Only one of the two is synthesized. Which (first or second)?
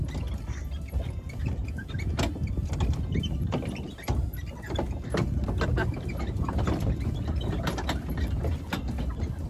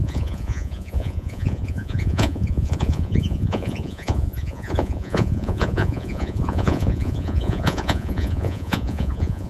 second